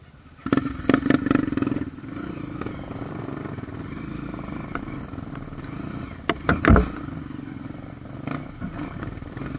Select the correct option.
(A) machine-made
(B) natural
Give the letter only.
B